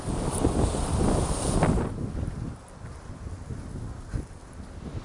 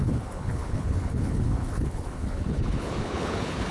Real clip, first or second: first